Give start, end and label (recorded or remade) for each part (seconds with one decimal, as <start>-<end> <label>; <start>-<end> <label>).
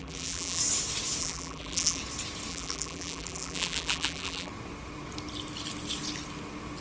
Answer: 0.0-0.6 remade; 0.6-1.2 recorded; 1.2-2.0 remade; 2.0-2.5 recorded; 2.5-4.5 remade; 4.5-6.8 recorded